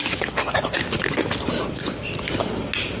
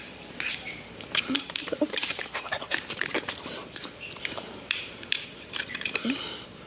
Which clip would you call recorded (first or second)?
first